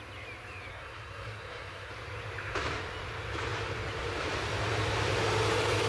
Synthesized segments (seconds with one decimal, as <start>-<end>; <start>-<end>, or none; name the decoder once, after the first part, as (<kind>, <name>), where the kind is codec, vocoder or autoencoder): 0.7-1.9 (codec, SNAC)